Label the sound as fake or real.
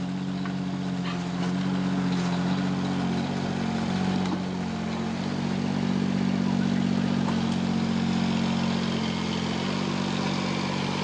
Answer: real